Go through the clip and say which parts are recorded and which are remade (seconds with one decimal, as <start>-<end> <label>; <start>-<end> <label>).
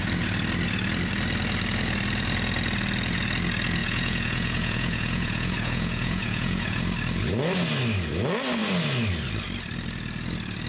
0.0-3.8 recorded; 3.8-6.8 remade; 6.8-10.7 recorded